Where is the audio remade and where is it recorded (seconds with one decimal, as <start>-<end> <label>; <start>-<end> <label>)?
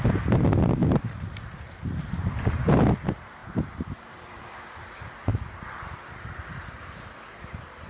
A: 0.0-0.8 recorded; 0.8-2.8 remade; 2.8-3.4 recorded; 3.4-4.4 remade; 4.4-5.3 recorded; 5.3-6.8 remade; 6.8-7.9 recorded